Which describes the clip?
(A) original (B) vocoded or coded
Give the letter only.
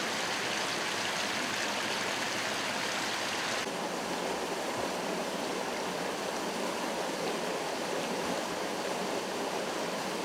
A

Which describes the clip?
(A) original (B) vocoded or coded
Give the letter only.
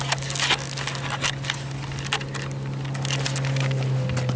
A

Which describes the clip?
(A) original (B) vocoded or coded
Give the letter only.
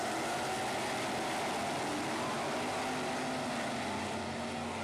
A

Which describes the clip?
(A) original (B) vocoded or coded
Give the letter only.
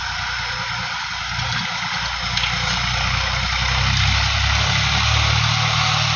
A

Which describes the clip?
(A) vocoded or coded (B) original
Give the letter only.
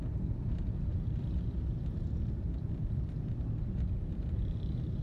A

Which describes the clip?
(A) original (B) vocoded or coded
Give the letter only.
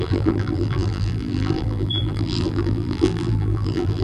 B